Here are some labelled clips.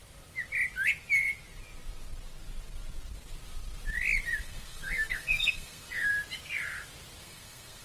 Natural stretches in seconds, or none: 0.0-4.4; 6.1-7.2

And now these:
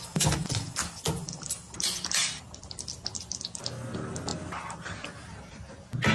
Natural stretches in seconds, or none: 0.0-6.1

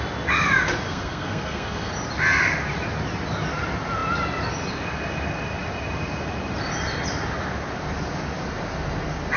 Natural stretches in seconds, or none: 0.0-0.9; 1.9-9.4

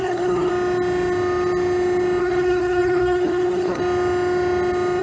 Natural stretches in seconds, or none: 0.5-2.2; 3.8-5.0

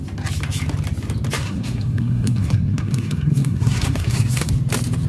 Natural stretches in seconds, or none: 0.0-1.4; 4.5-5.1

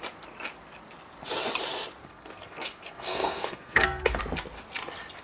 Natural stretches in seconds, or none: 0.0-2.0; 4.2-5.2

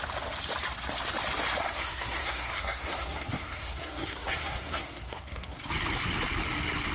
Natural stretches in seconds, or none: 0.0-1.6; 5.7-6.9

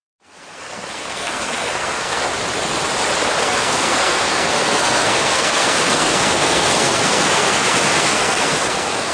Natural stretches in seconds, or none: 2.3-3.4